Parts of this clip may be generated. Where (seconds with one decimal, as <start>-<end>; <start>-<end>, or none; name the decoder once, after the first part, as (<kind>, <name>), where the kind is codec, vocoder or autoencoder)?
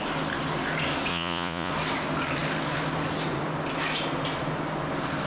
1.1-1.7 (vocoder, Vocos)